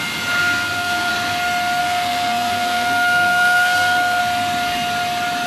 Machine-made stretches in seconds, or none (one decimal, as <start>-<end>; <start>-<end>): 0.4-1.1; 1.8-4.2